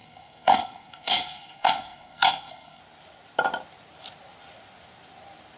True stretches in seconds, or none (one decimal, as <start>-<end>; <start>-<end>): 2.8-5.6